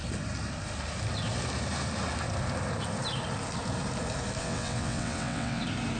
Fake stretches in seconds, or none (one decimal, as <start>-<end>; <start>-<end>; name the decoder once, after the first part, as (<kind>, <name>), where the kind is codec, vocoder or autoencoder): 4.4-5.6 (vocoder, WaveNeXt)